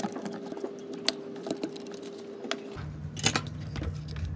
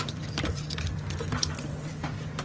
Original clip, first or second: first